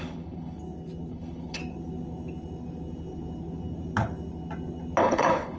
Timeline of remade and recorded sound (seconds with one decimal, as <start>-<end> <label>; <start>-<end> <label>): 0.0-0.6 remade; 0.6-1.1 recorded; 1.1-1.6 remade; 1.6-5.0 recorded; 5.0-5.6 remade